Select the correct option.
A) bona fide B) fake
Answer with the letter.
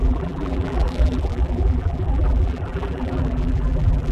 B